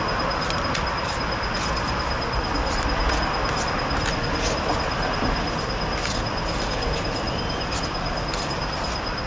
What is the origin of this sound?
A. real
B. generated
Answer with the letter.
A